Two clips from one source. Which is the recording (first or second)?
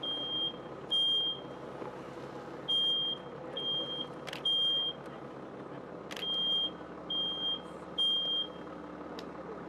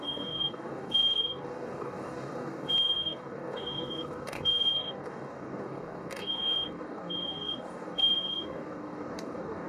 first